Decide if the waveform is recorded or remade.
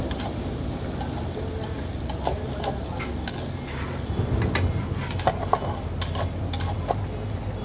recorded